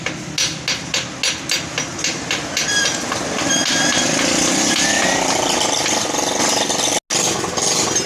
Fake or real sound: real